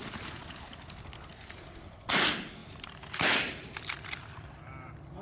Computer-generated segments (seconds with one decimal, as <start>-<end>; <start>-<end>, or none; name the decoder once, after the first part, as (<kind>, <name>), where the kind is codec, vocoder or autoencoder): none